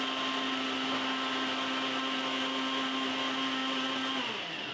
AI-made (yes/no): no